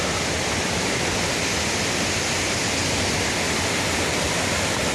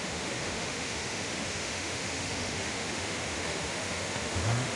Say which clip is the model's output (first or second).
second